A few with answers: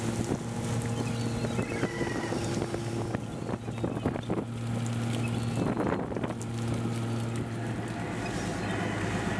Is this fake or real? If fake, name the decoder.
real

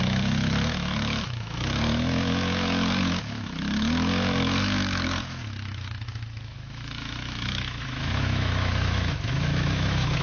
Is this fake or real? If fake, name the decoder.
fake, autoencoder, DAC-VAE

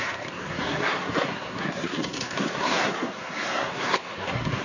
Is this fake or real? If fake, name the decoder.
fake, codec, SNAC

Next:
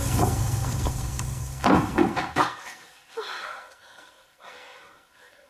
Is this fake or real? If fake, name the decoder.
fake, codec, SNAC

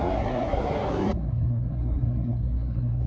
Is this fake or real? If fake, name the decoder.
fake, codec, SNAC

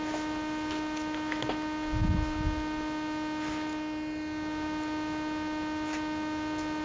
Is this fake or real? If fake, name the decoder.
real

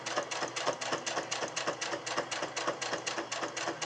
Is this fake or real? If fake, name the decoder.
real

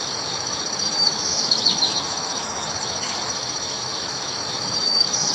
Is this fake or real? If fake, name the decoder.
fake, autoencoder, DAC-VAE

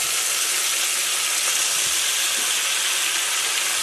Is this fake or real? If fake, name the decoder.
real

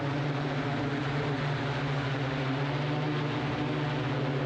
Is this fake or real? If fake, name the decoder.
real